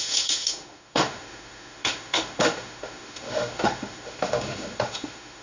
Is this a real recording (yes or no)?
no